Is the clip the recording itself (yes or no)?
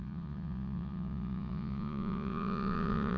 no